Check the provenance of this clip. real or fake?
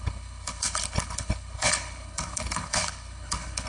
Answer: fake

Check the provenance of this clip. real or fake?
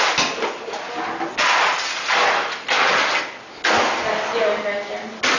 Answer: real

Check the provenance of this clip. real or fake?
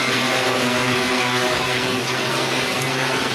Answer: fake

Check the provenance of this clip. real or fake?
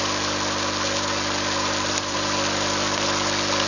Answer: real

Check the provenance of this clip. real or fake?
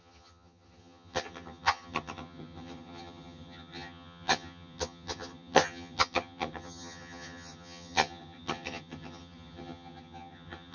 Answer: fake